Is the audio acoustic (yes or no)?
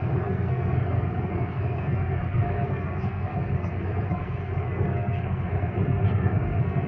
no